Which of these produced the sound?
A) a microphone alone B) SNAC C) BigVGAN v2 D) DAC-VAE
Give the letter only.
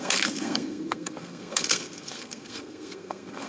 B